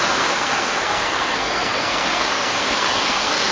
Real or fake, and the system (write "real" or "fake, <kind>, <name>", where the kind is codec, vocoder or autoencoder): fake, codec, SNAC